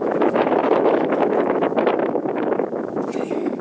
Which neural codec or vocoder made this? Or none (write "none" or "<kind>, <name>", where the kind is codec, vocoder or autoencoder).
autoencoder, DAC-VAE